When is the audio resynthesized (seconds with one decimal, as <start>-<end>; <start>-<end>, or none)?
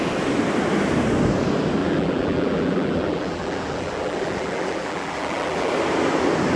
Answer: 1.8-5.7